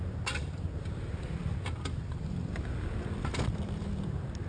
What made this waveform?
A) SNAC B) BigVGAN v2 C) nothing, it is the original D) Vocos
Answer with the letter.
C